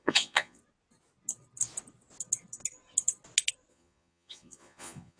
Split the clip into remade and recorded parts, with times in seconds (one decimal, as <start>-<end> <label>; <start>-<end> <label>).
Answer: 0.0-0.6 remade; 0.6-3.7 recorded; 3.7-5.2 remade